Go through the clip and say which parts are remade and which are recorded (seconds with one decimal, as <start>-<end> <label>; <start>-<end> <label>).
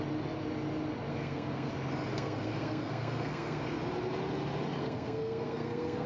0.0-1.1 recorded; 1.1-1.7 remade; 1.7-2.1 recorded; 2.1-3.6 remade; 3.6-4.8 recorded; 4.8-6.1 remade